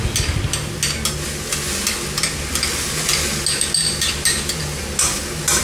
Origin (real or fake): real